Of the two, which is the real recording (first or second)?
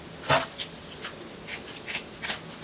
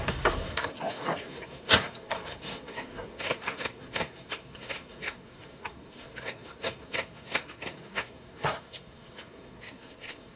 first